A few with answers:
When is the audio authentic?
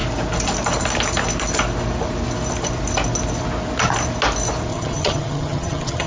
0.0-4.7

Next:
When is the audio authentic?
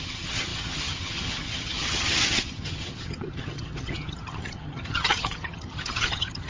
none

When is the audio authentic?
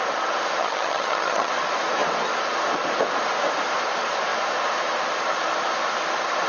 0.0-0.6; 1.5-6.5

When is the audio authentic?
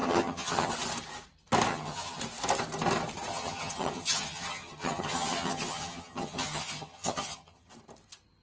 0.7-1.7; 2.2-3.3; 7.7-8.4